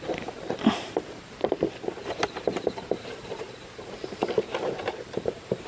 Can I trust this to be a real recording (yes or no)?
no